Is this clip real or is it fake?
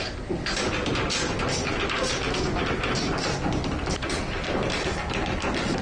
real